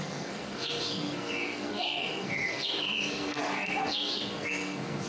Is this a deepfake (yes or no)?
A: yes